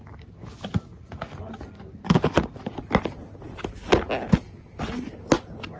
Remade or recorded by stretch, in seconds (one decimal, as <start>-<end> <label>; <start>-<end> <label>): 0.0-5.8 recorded